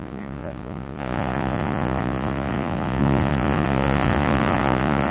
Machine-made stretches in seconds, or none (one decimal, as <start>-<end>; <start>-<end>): 0.0-5.1